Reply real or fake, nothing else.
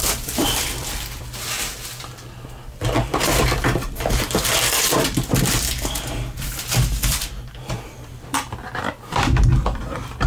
fake